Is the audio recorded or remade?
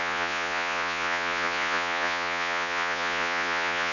remade